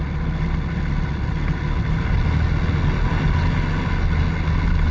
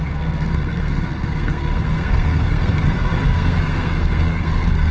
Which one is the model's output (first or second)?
second